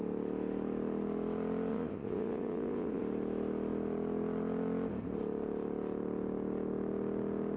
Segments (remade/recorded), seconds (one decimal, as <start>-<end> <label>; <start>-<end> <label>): 0.0-1.7 recorded; 1.7-3.0 remade; 3.0-7.6 recorded